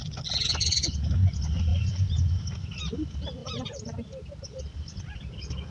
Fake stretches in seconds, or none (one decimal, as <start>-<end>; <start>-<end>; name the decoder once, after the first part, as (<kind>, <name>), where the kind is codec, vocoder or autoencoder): 1.7-2.4 (vocoder, BigVGAN v2); 3.4-4.6